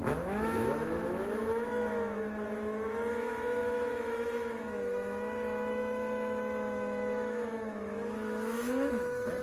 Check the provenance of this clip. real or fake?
fake